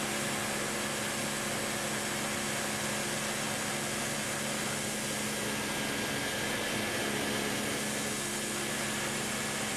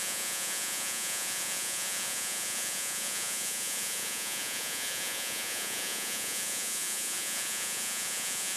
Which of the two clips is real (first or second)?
first